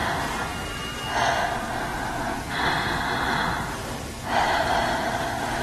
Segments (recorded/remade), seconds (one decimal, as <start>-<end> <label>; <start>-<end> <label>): 0.0-5.6 recorded